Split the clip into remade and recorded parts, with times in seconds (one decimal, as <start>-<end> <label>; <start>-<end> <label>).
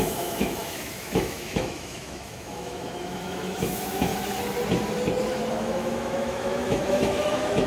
0.0-4.1 remade; 4.1-5.5 recorded; 5.5-7.7 remade